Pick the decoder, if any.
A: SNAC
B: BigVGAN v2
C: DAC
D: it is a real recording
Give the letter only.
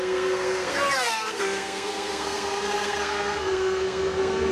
A